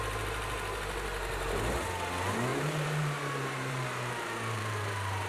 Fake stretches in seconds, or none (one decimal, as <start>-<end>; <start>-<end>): 2.5-5.3